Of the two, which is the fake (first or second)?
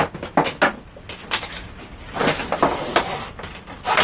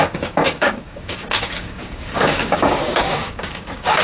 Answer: second